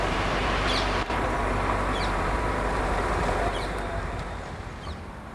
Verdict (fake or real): fake